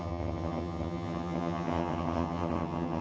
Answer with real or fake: fake